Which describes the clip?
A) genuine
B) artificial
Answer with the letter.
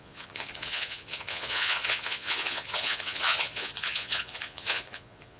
B